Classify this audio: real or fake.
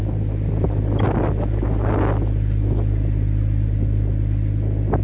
real